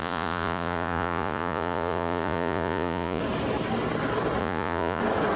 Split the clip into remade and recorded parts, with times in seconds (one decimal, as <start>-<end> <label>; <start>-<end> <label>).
0.0-3.2 remade; 3.2-4.4 recorded; 4.4-5.0 remade; 5.0-5.4 recorded